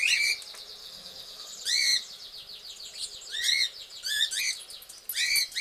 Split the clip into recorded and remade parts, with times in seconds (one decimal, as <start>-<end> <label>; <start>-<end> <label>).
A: 0.0-0.8 recorded; 0.8-1.5 remade; 1.5-5.6 recorded